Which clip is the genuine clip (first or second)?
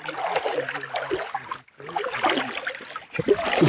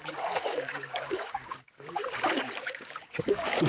first